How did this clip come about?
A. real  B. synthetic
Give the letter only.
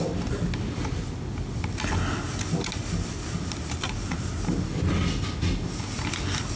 A